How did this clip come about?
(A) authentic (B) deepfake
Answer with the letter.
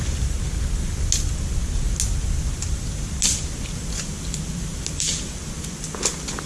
A